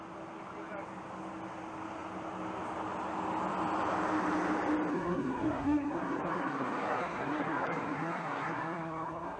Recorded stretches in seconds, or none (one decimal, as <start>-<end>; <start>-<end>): 0.0-4.9